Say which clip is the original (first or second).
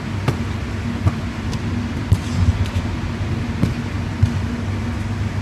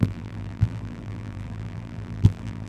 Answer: first